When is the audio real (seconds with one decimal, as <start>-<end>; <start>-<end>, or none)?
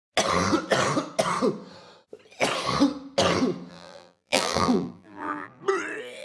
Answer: 0.0-3.7; 5.6-6.2